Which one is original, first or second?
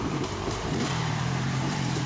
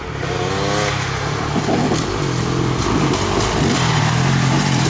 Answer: second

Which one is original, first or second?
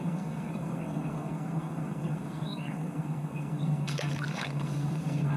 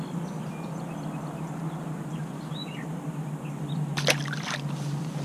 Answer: second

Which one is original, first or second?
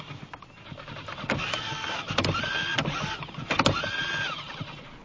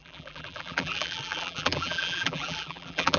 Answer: first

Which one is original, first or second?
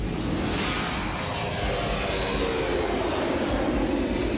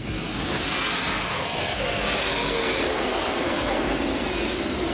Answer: first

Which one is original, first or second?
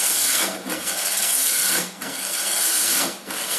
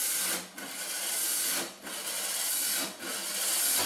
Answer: second